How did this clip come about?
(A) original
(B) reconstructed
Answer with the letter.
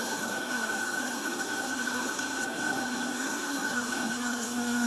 B